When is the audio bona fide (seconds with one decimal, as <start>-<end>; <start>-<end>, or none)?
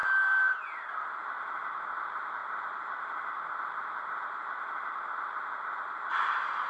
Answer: 0.0-6.7